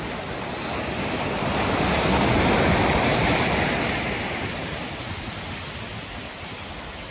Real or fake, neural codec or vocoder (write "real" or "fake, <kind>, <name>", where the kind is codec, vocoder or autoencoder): real